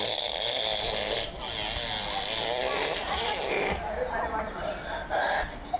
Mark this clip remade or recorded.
recorded